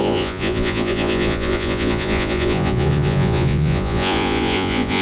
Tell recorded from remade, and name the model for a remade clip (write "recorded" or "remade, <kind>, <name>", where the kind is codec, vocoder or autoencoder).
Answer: remade, vocoder, Vocos